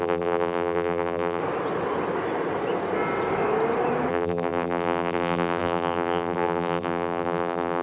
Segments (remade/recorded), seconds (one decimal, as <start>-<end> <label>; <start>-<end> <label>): 0.0-1.4 remade; 1.4-4.1 recorded; 4.1-7.8 remade